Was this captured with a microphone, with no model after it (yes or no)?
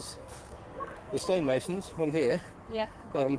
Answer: no